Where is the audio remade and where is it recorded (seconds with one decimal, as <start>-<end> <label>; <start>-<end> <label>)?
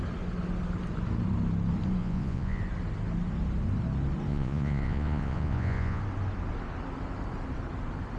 0.0-2.0 recorded; 2.0-2.6 remade; 2.6-4.3 recorded; 4.3-6.0 remade; 6.0-8.2 recorded